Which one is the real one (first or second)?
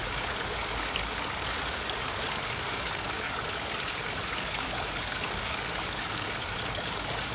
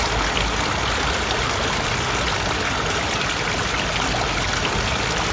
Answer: second